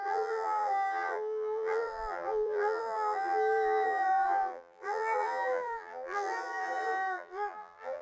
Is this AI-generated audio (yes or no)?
yes